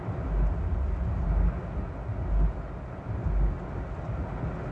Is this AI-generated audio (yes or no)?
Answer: no